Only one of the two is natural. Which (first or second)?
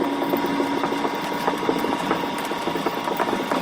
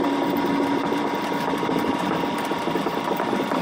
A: first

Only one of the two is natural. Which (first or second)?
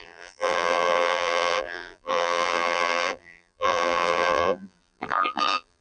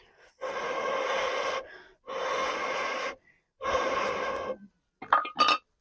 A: second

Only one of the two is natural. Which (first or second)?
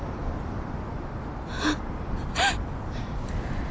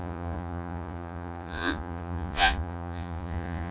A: first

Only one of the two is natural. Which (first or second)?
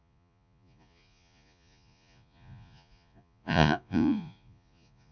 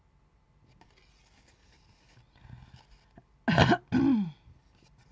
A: second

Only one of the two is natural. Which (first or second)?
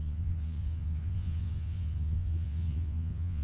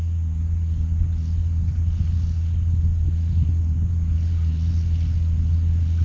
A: second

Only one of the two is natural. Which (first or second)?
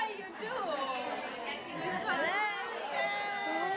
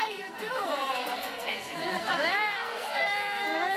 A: first